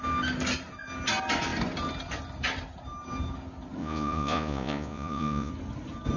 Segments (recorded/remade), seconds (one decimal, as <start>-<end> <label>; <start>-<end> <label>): 0.0-3.8 recorded; 3.8-5.5 remade; 5.5-6.2 recorded